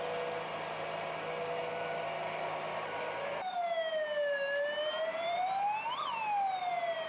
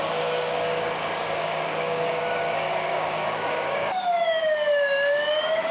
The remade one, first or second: second